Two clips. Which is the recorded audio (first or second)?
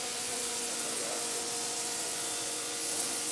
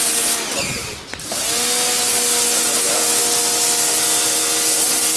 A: second